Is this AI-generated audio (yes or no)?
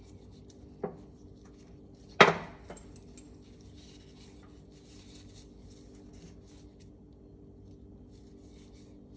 no